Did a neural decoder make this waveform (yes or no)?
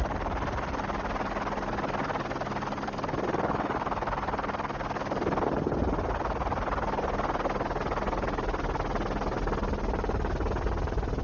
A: no